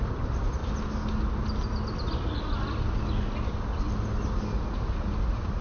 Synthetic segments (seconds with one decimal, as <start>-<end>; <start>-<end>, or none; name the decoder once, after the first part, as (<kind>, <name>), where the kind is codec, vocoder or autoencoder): none